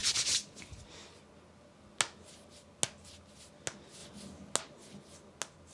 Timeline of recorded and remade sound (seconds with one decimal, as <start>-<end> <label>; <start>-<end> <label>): 0.0-5.7 recorded